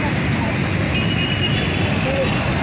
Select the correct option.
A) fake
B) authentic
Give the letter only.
B